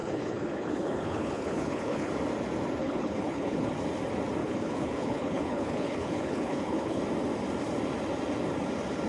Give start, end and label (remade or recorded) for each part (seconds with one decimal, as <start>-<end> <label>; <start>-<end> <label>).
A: 0.0-2.1 remade; 2.1-2.8 recorded; 2.8-3.7 remade; 3.7-4.4 recorded; 4.4-7.0 remade; 7.0-9.1 recorded